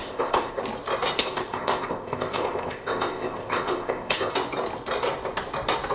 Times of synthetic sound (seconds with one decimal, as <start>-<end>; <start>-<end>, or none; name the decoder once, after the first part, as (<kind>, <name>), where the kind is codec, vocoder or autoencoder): 0.0-0.6 (codec, ZipCodec); 1.2-4.3